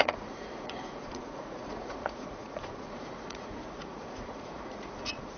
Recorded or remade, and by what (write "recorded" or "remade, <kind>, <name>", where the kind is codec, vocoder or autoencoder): remade, vocoder, Vocos